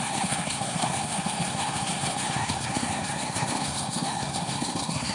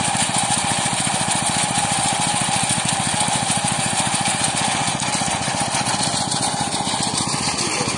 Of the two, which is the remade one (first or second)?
first